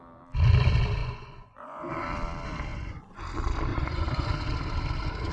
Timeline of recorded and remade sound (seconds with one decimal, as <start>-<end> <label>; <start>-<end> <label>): 0.0-1.0 recorded; 1.0-1.9 remade; 1.9-2.7 recorded; 2.7-3.2 remade; 3.2-3.7 recorded; 3.7-4.3 remade; 4.3-5.3 recorded